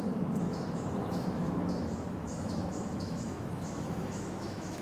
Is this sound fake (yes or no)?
yes